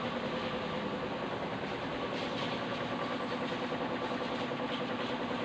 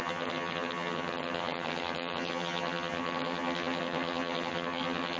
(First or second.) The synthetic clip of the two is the second